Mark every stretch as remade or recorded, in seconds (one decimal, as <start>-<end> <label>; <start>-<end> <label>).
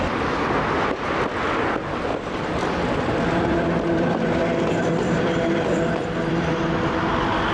0.0-2.1 recorded; 2.1-6.6 remade; 6.6-7.5 recorded